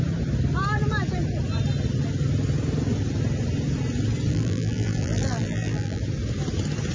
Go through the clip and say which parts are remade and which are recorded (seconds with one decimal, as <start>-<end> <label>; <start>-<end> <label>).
0.0-4.3 recorded; 4.3-6.0 remade; 6.0-6.9 recorded